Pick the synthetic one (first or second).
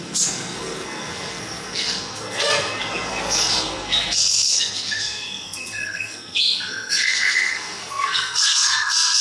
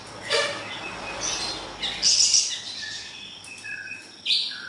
first